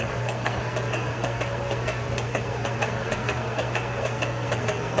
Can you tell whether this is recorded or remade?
remade